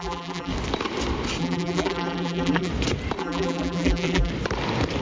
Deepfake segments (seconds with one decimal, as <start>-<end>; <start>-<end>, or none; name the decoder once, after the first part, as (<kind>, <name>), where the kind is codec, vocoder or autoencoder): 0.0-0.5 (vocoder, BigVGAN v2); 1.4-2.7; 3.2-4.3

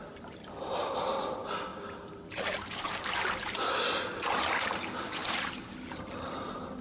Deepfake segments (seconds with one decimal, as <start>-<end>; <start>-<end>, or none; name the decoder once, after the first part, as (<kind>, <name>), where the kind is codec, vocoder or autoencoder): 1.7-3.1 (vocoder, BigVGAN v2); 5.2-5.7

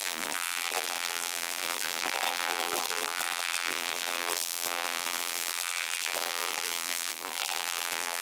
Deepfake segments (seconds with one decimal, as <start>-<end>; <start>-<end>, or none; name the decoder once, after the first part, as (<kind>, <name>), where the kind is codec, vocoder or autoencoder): 0.0-8.2 (vocoder, BigVGAN v2)